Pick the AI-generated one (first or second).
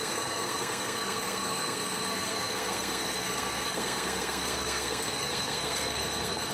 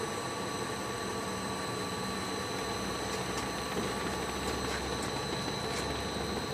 first